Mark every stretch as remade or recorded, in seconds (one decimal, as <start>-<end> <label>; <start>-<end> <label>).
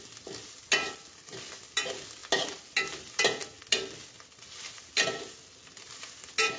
0.0-6.6 recorded